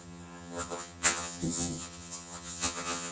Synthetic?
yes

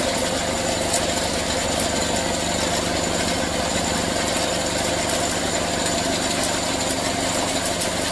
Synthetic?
no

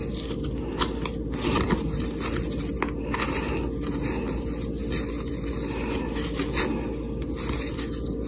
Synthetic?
no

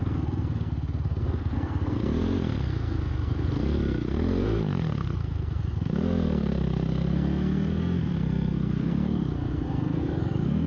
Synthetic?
yes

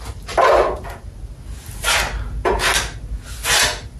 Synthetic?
no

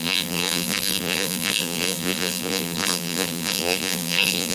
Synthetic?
yes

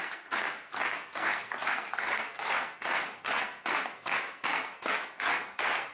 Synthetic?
yes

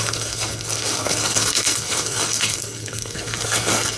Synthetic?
yes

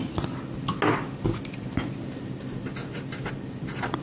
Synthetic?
no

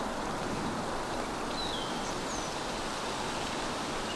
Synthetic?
no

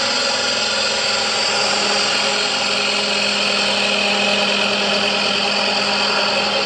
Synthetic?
no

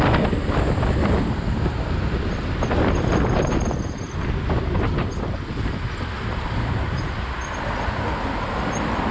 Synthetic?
no